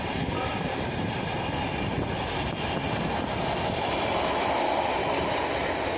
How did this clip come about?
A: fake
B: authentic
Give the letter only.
B